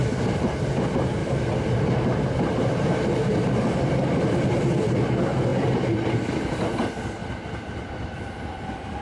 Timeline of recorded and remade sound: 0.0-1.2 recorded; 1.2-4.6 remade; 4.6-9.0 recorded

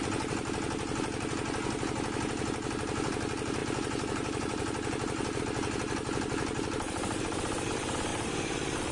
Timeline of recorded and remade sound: 0.0-3.6 recorded; 3.6-5.4 remade; 5.4-8.1 recorded; 8.1-8.9 remade

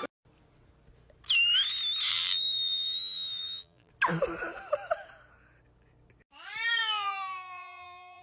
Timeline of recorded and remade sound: 0.0-2.1 recorded; 2.1-3.9 remade; 3.9-6.8 recorded; 6.8-8.2 remade